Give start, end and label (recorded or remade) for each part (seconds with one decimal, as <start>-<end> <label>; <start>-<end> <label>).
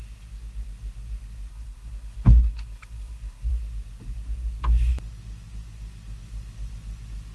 0.0-1.5 recorded; 1.5-3.5 remade; 3.5-7.3 recorded